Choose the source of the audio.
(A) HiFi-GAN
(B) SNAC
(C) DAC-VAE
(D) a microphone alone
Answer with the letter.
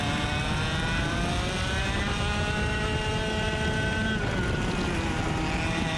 D